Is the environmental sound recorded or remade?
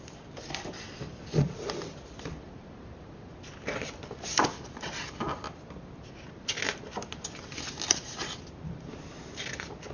recorded